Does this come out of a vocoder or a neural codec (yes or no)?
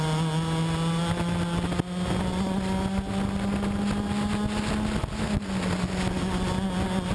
no